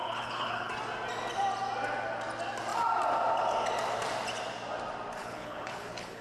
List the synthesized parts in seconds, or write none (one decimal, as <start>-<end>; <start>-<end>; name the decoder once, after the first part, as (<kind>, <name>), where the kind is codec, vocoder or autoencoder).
0.0-0.7 (codec, HILCodec); 5.2-6.2

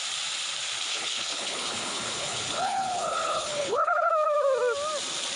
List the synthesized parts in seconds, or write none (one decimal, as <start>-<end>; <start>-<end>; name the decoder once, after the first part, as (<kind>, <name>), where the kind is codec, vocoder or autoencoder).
0.9-4.1 (codec, HILCodec)

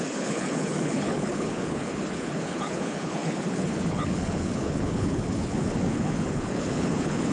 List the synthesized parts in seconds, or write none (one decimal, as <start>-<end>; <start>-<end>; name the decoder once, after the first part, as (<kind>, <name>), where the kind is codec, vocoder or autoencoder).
0.0-7.3 (codec, HILCodec)

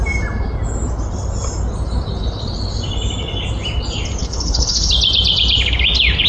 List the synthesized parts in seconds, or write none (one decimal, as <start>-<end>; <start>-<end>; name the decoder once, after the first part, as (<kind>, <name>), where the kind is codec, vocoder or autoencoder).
4.2-4.9 (codec, HILCodec)

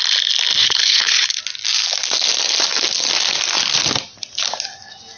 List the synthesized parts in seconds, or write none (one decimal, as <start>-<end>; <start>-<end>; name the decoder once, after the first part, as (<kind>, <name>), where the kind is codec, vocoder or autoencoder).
0.6-1.4 (codec, HILCodec)

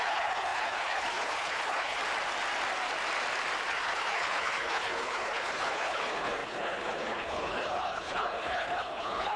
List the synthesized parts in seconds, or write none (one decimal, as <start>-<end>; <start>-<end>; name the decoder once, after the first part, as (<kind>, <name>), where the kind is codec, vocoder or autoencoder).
0.0-2.0 (codec, HILCodec); 3.7-9.4